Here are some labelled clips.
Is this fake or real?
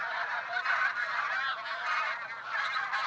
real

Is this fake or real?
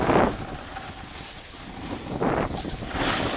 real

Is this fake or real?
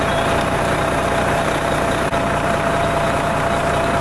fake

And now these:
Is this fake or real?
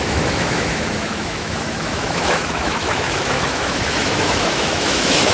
fake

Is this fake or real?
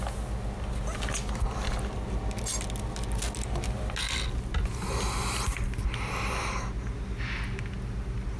real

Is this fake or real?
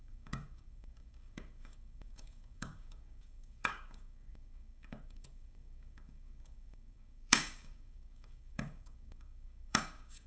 fake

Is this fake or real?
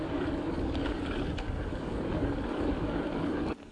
fake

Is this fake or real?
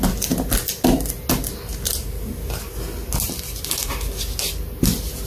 real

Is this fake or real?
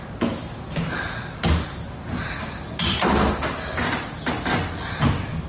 real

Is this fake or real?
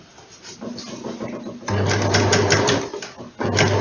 real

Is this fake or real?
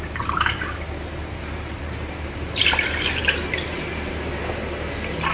fake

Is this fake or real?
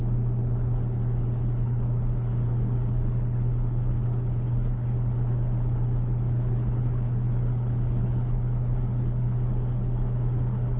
fake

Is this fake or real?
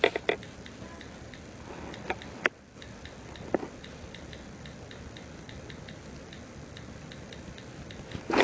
real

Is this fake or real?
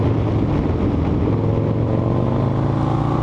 real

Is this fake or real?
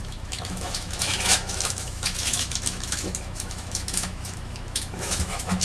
fake